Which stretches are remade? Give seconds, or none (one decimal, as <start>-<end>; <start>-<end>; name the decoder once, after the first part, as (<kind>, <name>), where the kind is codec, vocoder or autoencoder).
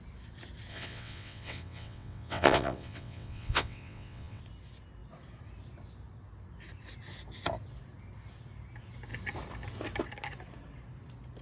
0.7-4.4 (vocoder, WaveNeXt)